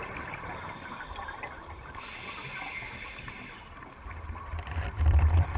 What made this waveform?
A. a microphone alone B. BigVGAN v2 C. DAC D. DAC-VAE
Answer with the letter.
A